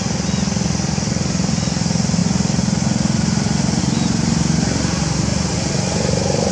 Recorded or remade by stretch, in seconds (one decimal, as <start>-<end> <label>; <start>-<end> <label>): 0.0-6.5 recorded